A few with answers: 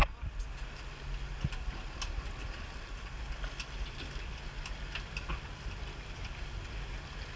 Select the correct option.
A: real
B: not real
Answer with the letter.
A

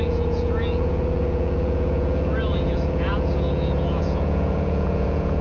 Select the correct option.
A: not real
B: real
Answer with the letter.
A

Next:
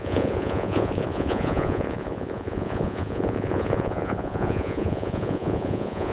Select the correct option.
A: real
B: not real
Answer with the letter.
B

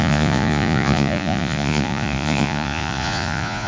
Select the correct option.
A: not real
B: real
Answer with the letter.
A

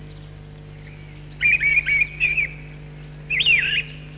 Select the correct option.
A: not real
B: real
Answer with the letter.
B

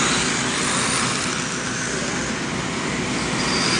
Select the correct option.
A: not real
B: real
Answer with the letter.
B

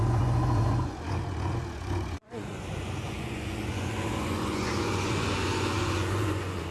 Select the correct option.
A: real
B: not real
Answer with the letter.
B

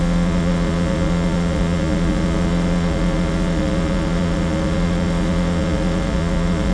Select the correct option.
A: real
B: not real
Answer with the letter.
B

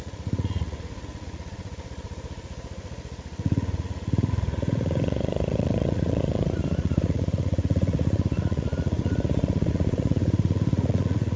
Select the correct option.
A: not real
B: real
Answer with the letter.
A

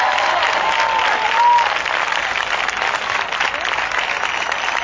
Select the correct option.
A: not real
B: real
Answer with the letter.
B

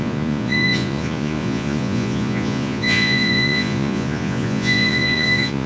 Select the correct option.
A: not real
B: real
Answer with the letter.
A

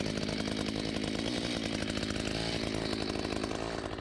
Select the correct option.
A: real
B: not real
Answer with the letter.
A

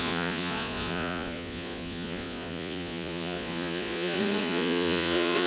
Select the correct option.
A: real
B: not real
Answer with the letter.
B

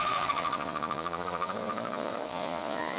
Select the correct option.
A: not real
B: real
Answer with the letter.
A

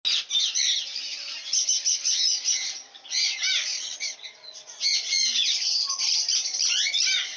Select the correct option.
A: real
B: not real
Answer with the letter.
A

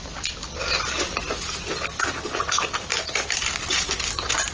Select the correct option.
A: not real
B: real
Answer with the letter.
B